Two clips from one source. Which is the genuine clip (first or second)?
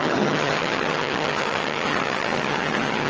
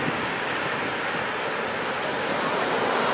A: second